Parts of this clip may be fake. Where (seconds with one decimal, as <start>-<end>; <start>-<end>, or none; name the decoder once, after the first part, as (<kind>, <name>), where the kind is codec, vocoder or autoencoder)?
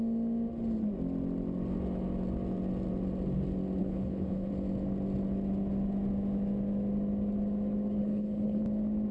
3.8-4.5 (codec, HILCodec); 8.0-8.6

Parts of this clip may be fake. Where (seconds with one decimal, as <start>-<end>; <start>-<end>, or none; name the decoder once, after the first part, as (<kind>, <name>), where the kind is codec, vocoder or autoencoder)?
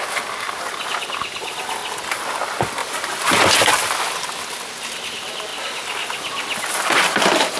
none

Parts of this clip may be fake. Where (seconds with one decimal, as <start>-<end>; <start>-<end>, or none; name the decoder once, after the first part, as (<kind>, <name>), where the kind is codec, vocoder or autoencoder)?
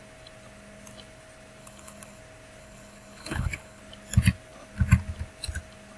1.6-2.2 (codec, HILCodec); 2.6-3.8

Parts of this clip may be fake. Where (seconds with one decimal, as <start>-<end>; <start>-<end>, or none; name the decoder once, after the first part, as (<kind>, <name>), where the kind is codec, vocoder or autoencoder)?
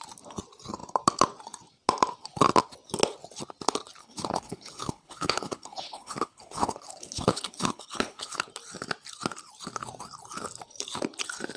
4.0-8.5 (codec, HILCodec)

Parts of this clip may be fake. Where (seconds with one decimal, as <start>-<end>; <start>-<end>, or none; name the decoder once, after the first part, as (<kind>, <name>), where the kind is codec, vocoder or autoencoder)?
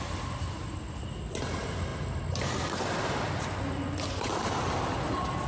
none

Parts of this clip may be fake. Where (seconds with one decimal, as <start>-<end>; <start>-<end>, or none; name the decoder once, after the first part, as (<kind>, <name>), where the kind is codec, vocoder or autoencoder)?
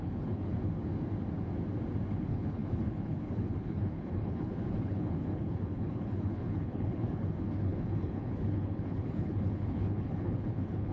0.0-0.5 (codec, HILCodec); 2.1-10.9